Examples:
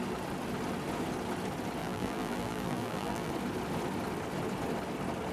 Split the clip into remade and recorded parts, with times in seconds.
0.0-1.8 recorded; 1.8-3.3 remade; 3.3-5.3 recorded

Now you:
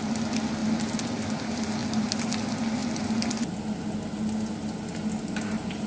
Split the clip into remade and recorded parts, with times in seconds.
0.0-5.9 recorded